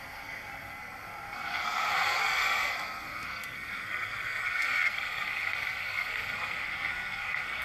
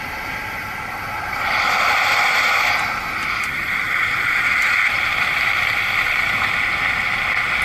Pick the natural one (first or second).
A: second